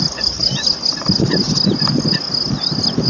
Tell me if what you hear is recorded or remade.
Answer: recorded